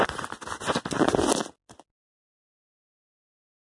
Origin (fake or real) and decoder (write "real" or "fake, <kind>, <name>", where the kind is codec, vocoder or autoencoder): real